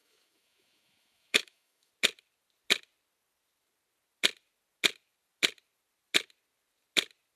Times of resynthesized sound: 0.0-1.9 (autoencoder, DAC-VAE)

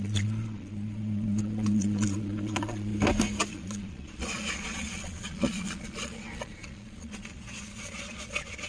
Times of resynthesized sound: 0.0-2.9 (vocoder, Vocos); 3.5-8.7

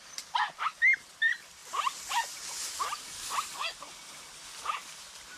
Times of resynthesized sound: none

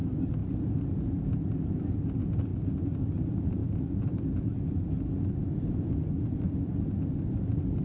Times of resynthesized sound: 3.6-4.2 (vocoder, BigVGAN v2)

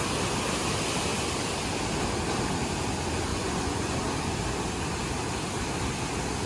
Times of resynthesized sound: 3.3-4.0 (vocoder, Vocos)

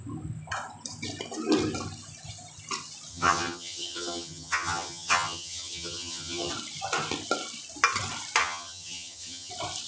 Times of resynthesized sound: 3.1-6.5 (vocoder, HiFi-GAN); 8.4-9.5